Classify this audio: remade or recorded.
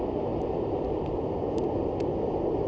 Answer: recorded